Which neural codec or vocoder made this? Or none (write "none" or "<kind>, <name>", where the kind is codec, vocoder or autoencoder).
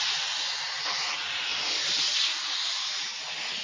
none